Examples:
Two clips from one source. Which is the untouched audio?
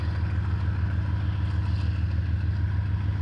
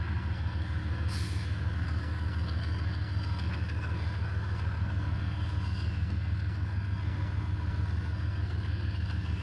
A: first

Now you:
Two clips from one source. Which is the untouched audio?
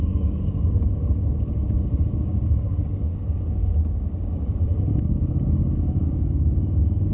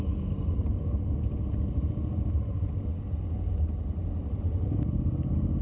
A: second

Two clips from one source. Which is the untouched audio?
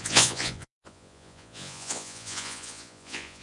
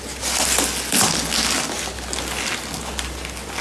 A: second